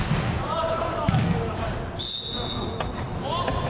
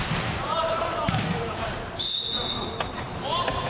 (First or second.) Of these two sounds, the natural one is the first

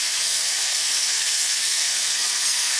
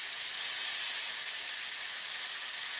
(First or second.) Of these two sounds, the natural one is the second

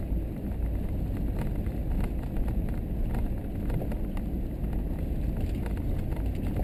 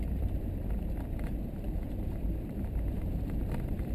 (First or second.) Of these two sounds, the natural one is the first